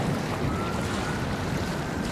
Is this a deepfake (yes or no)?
no